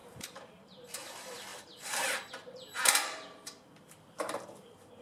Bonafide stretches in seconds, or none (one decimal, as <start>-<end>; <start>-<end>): none